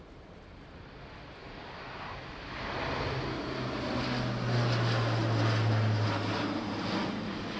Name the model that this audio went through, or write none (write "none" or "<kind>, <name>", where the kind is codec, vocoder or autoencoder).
none